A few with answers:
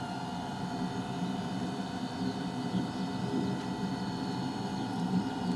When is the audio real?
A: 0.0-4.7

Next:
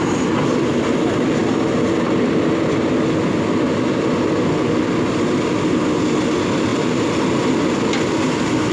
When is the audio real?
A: 0.0-6.7; 7.5-8.7

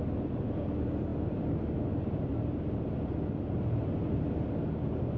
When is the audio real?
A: 0.0-5.2

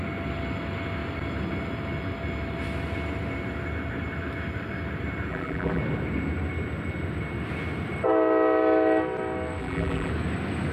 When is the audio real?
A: 0.0-5.3; 5.8-9.6; 10.1-10.7

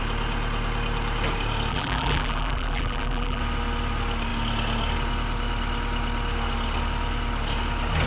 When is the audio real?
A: 0.0-1.7; 3.4-8.1

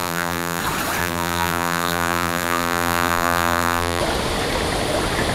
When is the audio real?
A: 0.6-1.0; 4.0-5.3

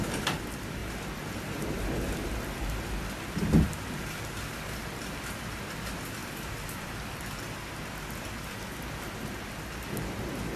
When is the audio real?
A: 0.0-6.2; 7.3-10.6

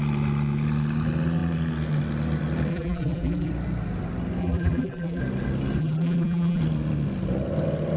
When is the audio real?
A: 0.0-2.7; 3.5-4.4; 5.2-5.8; 6.6-8.0